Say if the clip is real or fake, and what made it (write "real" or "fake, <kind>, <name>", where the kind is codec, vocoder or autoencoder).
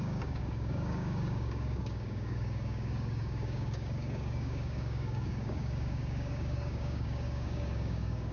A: fake, codec, DAC